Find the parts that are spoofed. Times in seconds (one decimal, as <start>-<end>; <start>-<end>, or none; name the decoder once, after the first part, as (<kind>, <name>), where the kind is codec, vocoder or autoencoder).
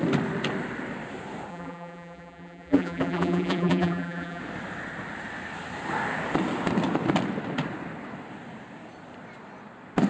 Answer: 1.5-4.4 (vocoder, BigVGAN v2)